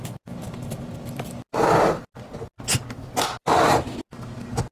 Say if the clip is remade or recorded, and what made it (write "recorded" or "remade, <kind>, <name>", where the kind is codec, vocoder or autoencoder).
recorded